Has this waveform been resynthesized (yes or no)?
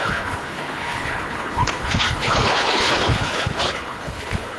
yes